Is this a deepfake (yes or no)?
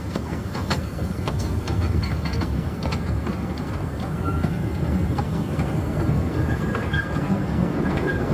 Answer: yes